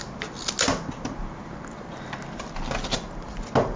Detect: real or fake real